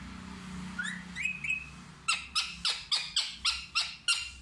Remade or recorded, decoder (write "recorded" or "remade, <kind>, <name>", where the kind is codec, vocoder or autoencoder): recorded